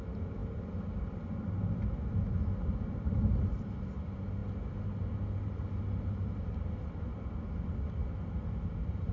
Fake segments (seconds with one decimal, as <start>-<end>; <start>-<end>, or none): none